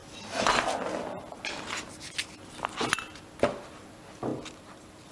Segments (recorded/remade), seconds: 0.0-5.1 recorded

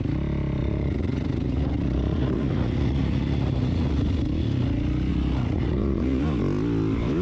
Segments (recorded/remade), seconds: 0.0-0.6 recorded; 0.6-4.0 remade; 4.0-5.1 recorded; 5.1-6.2 remade; 6.2-7.2 recorded

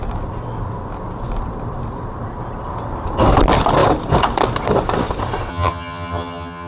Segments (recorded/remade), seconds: 0.0-5.5 recorded; 5.5-6.7 remade